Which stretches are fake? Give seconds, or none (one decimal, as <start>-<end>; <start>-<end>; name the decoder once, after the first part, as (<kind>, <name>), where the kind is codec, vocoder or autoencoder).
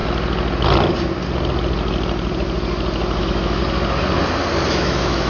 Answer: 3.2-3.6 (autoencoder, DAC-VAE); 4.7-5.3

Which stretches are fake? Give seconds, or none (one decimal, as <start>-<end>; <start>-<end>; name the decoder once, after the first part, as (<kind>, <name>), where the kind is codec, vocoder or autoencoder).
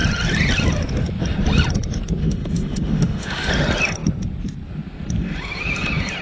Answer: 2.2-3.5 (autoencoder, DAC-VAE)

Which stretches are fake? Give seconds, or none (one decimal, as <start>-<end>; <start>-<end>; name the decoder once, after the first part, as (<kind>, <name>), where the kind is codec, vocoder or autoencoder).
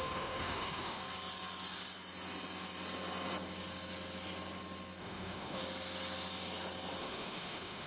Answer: 0.0-1.0 (autoencoder, DAC-VAE); 5.0-5.6; 7.0-7.9